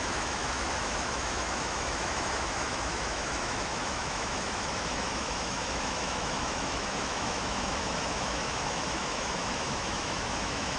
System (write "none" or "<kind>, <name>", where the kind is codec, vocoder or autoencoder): autoencoder, DAC-VAE